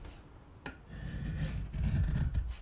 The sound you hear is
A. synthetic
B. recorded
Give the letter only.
B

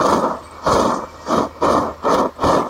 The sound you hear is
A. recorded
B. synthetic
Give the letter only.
A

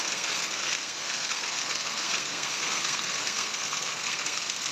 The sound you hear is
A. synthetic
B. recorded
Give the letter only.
A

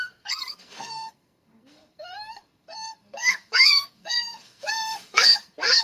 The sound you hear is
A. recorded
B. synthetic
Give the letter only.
B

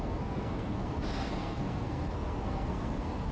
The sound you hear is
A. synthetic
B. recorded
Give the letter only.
A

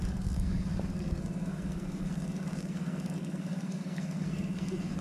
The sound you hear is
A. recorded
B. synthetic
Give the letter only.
B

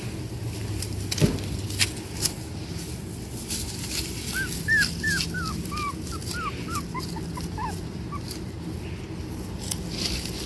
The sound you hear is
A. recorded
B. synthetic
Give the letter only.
A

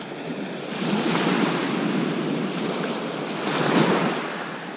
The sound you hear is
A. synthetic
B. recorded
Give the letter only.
B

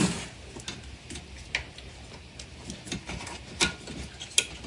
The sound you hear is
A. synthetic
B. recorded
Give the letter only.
B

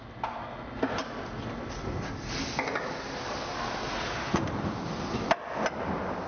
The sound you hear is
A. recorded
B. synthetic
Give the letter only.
A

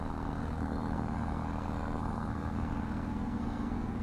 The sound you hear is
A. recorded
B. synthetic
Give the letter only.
B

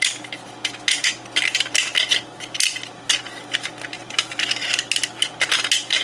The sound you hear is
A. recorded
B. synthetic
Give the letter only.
A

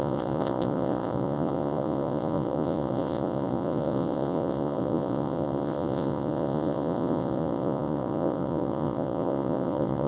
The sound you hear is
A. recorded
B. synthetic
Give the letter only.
B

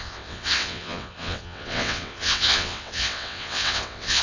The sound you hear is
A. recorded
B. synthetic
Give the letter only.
B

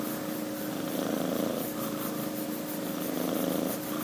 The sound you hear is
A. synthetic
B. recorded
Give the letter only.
A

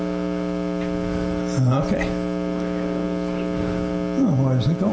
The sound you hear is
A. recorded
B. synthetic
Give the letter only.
A